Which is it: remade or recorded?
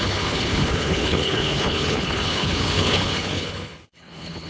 remade